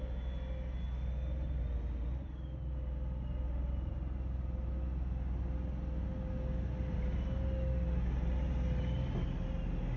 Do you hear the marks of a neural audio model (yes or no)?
no